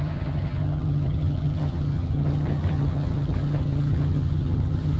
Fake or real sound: fake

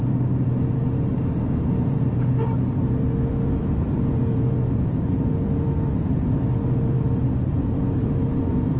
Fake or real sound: fake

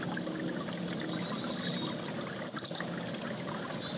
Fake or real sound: real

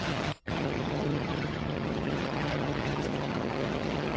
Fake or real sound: fake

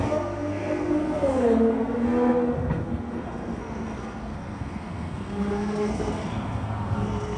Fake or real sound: fake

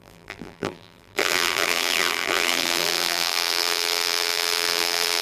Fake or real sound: fake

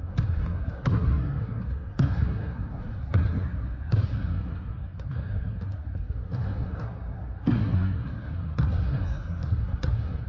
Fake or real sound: fake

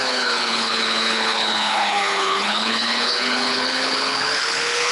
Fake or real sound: fake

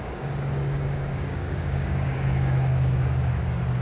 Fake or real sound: fake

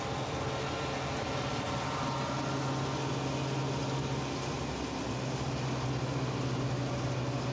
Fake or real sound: real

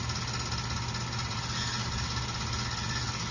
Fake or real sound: real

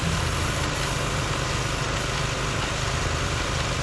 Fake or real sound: real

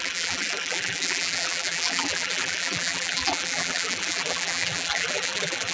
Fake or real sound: fake